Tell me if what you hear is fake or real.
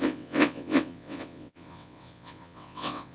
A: fake